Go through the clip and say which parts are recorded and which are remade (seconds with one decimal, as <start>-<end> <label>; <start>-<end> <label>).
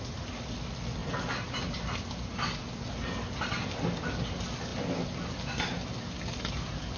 0.0-7.0 recorded